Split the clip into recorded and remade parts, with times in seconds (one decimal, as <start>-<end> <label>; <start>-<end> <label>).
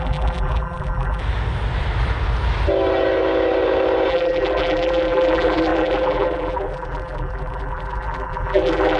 0.0-1.2 remade; 1.2-4.1 recorded; 4.1-9.0 remade